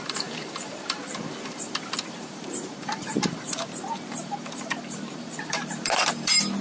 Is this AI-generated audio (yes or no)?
yes